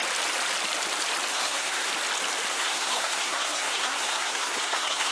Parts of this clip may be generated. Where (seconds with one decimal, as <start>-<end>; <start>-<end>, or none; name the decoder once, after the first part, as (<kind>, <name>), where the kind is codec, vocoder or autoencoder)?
1.3-1.9 (codec, SNAC); 2.5-5.1